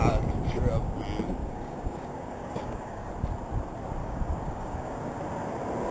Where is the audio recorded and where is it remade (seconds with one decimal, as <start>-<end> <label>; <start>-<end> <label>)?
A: 0.0-1.4 recorded; 1.4-3.1 remade; 3.1-4.0 recorded; 4.0-5.2 remade; 5.2-5.9 recorded